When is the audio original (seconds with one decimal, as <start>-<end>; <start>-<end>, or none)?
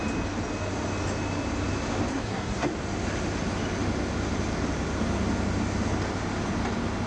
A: 0.0-2.1; 2.7-7.1